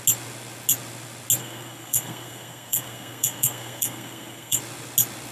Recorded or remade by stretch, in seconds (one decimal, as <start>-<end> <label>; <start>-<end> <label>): 0.0-1.4 recorded; 1.4-4.6 remade; 4.6-5.3 recorded